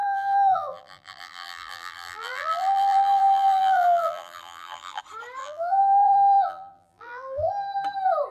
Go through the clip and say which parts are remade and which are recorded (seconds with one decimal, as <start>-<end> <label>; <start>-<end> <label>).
0.0-5.0 remade; 5.0-5.4 recorded; 5.4-7.5 remade; 7.5-8.3 recorded